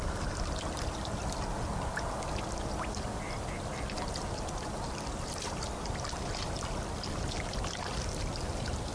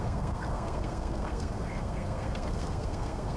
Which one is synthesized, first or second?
second